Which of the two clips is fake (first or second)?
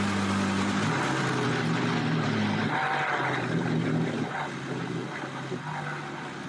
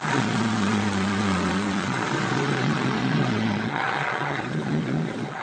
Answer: second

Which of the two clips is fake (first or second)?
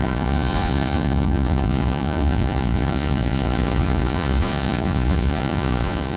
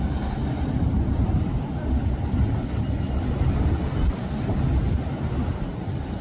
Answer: first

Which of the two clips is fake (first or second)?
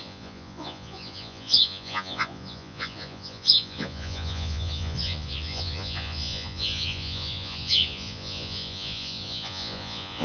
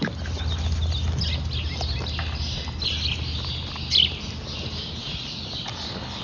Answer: first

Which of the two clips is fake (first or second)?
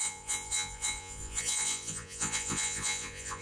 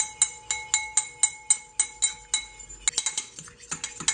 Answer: first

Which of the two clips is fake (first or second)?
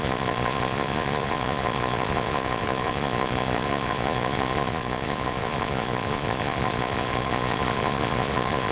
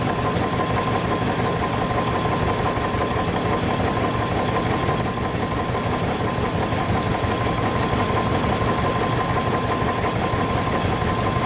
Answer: first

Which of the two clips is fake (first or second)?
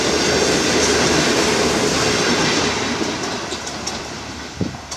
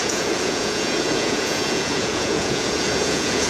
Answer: second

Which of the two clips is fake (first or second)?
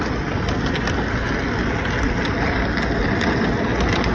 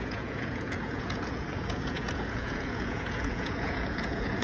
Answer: second